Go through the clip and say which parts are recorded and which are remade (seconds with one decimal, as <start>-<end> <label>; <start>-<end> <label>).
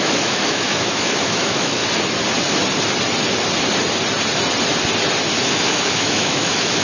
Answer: 0.0-1.8 remade; 1.8-5.4 recorded; 5.4-6.8 remade